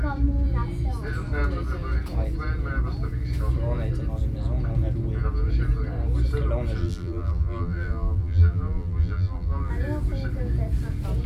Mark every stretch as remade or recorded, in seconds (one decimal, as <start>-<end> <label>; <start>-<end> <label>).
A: 0.0-6.8 recorded; 6.8-9.7 remade; 9.7-11.3 recorded